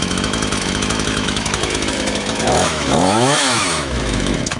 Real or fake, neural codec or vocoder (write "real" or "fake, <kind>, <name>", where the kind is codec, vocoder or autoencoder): fake, autoencoder, DAC-VAE